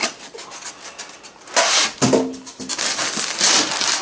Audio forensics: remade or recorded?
recorded